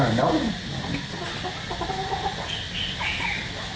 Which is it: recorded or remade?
recorded